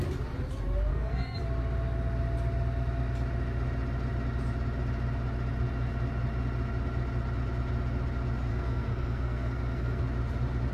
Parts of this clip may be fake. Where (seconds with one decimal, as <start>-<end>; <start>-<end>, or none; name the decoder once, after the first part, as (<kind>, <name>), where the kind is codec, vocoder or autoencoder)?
0.9-1.4 (codec, SNAC); 8.5-10.0

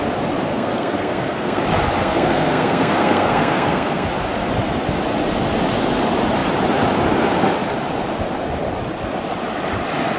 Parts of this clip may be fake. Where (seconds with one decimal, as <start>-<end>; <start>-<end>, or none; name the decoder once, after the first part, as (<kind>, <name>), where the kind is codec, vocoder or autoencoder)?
0.5-1.6 (codec, SNAC); 2.0-4.1